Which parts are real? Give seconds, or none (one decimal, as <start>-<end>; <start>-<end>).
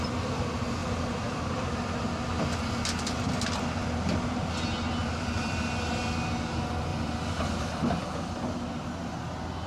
0.0-5.0; 5.9-6.9; 8.7-9.7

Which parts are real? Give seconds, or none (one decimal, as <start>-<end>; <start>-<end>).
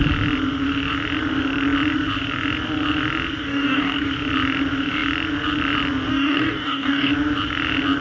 0.0-3.4; 4.1-6.1; 7.1-8.0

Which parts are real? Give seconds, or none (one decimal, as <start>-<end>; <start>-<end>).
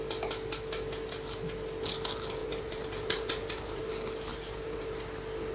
0.0-2.4; 3.9-4.3; 4.9-5.5